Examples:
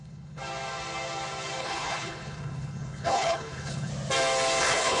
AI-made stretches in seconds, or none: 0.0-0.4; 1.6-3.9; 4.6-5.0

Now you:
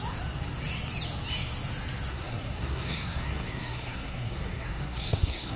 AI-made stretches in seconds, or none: 2.1-5.6

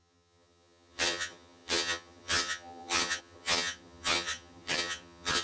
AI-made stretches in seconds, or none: 0.0-5.4

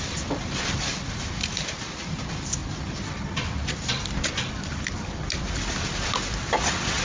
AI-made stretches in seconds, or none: none